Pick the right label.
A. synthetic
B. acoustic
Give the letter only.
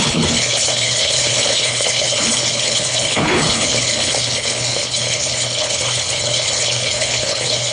A